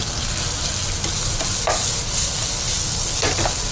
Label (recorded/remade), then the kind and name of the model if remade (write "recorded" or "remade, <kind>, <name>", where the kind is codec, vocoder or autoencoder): recorded